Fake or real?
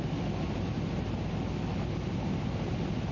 real